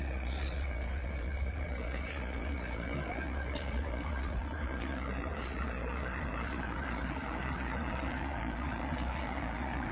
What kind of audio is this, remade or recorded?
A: remade